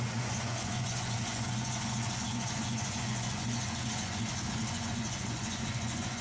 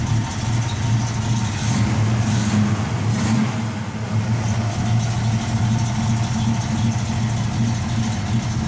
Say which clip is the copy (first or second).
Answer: first